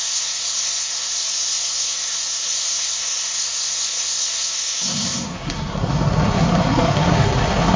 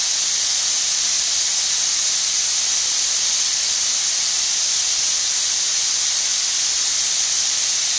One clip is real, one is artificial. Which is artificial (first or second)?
first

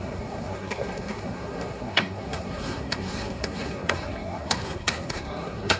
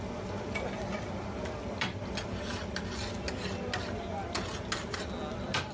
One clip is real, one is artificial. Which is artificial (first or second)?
first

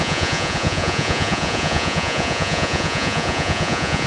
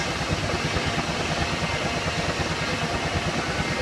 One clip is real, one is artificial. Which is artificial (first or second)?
first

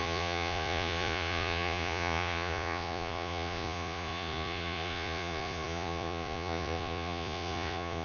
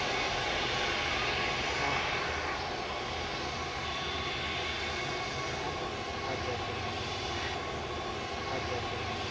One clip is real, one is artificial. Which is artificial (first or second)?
first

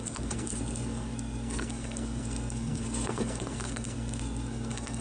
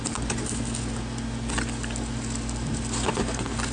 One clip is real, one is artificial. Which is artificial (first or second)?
first